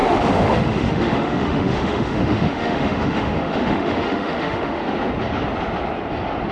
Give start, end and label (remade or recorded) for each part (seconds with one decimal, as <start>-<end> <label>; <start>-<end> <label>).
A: 0.0-4.8 remade; 4.8-6.5 recorded